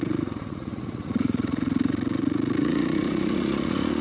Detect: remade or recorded remade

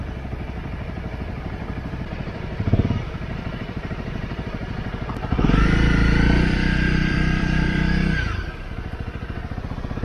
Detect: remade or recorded remade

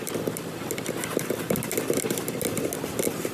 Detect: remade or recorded recorded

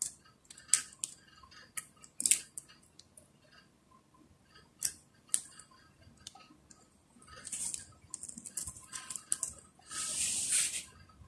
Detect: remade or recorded recorded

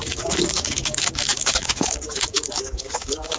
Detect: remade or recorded remade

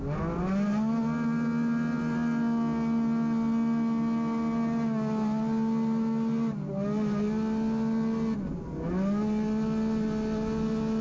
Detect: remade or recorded recorded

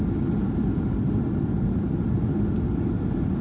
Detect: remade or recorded recorded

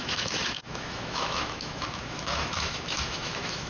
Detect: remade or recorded remade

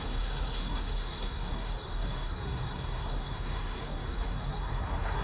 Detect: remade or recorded remade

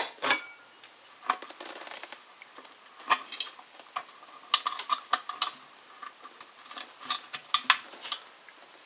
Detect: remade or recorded recorded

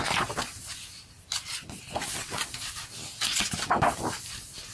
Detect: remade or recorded recorded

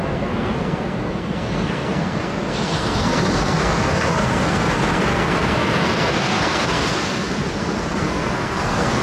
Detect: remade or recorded remade